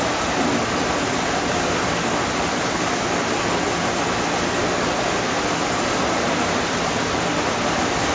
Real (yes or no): yes